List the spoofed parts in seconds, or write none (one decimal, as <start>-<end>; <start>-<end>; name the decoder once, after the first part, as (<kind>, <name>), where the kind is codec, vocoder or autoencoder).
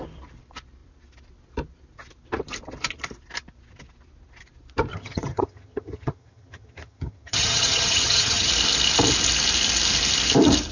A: 4.9-8.5 (vocoder, HiFi-GAN)